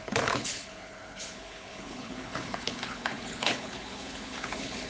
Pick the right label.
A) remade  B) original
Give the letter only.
A